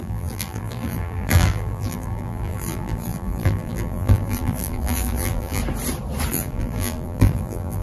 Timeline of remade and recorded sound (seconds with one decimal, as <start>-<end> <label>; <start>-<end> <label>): 0.0-5.6 remade; 5.6-6.3 recorded; 6.3-7.8 remade